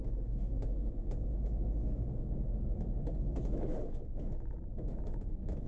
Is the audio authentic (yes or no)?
no